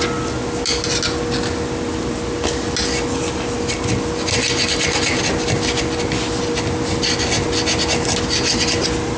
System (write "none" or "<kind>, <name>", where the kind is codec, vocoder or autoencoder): none